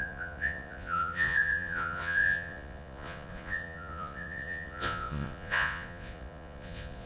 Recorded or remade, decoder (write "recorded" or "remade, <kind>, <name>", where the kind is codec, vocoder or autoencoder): remade, vocoder, Vocos